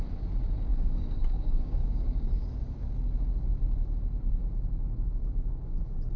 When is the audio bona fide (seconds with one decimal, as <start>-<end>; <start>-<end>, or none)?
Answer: 0.0-0.7; 2.4-6.2